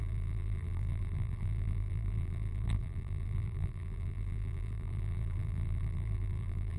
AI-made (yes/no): yes